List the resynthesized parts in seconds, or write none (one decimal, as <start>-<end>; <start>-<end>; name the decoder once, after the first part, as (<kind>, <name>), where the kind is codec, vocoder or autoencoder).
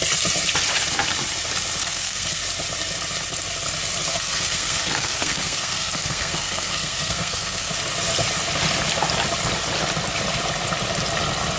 1.8-2.4 (codec, SNAC); 4.1-7.7